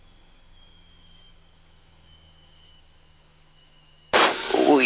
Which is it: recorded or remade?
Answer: remade